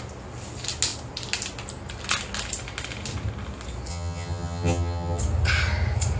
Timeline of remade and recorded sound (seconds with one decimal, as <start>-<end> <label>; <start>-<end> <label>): 0.0-3.9 recorded; 3.9-5.2 remade; 5.2-6.2 recorded